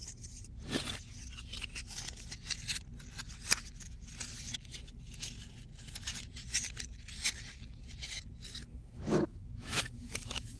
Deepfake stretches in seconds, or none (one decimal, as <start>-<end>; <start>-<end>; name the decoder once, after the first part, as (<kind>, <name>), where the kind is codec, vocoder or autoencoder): 8.7-10.6 (autoencoder, DAC-VAE)